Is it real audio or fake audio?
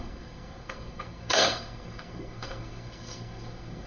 fake